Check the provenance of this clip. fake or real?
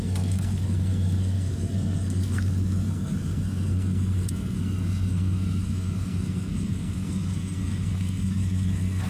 fake